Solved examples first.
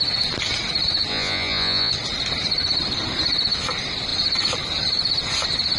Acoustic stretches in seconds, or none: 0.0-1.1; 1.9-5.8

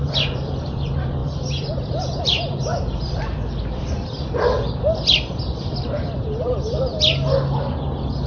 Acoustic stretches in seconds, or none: 6.9-8.3

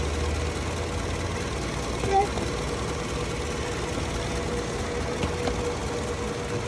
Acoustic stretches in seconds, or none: 0.0-6.7

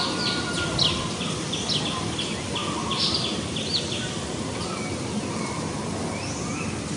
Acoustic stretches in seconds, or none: 0.0-7.0